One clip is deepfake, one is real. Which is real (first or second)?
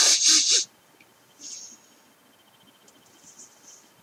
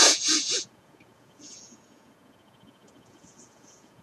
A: first